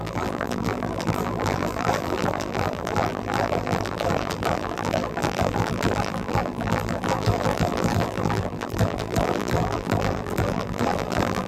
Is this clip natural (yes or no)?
no